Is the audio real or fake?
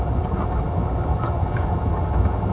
fake